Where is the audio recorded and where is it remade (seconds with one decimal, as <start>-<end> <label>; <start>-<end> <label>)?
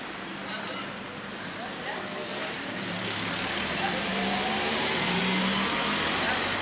0.0-2.3 recorded; 2.3-5.2 remade; 5.2-6.6 recorded